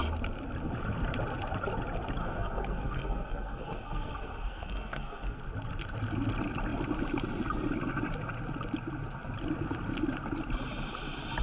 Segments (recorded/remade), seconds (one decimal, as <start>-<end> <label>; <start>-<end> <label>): 0.0-2.2 recorded; 2.2-5.4 remade; 5.4-11.4 recorded